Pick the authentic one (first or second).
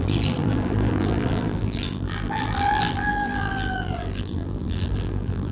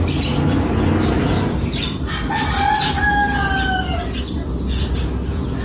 second